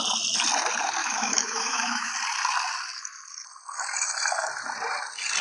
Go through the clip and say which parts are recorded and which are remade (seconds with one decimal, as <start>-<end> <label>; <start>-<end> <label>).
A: 0.0-1.0 recorded; 1.0-2.1 remade; 2.1-5.4 recorded